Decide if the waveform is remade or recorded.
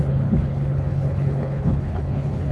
remade